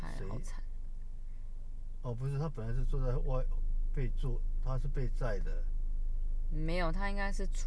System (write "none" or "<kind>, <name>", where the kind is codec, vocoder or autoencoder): none